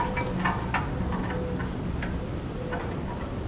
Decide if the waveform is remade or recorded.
recorded